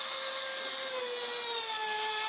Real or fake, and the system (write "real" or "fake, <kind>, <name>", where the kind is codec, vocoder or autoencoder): real